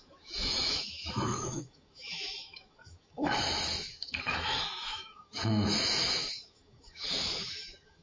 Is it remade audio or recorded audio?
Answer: remade